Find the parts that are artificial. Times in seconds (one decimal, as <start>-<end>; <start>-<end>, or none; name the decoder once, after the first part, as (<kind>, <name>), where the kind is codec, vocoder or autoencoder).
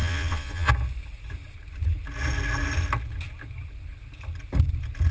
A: 0.0-0.7 (vocoder, Vocos)